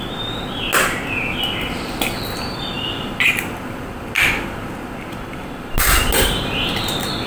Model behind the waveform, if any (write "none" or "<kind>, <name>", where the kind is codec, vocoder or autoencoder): none